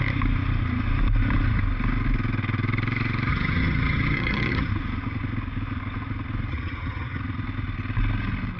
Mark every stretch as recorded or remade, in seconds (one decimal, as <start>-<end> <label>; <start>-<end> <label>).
0.0-3.3 recorded; 3.3-4.7 remade; 4.7-6.5 recorded; 6.5-7.2 remade; 7.2-8.6 recorded